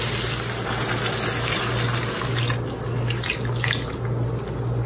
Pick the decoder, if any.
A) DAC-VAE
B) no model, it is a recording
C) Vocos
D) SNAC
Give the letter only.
B